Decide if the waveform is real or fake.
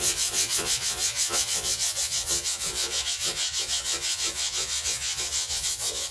fake